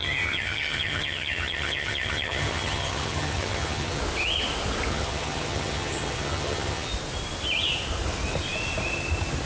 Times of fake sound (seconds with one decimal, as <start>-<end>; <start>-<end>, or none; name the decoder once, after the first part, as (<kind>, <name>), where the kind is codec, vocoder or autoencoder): 0.0-4.0 (vocoder, HiFi-GAN); 4.9-6.9